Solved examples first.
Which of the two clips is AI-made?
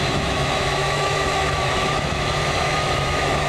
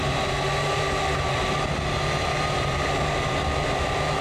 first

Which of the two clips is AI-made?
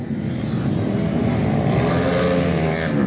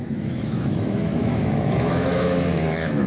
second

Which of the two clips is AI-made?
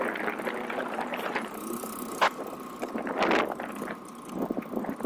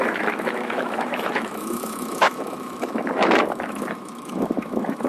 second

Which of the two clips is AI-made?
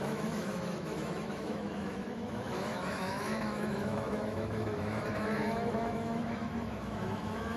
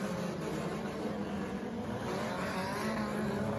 first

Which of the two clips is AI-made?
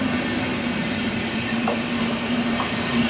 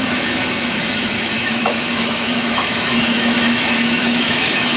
second